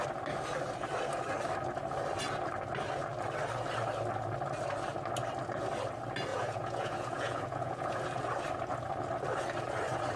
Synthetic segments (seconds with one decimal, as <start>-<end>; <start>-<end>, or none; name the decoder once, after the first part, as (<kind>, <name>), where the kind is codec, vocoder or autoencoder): 6.3-8.0 (vocoder, Vocos)